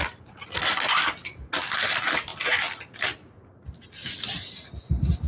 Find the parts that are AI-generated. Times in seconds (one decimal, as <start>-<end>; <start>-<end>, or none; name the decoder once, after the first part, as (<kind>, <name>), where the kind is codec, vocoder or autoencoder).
none